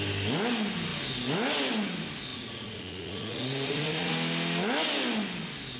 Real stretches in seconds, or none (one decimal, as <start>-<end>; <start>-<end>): 0.0-2.3; 4.1-5.8